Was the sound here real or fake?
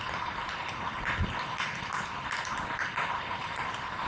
real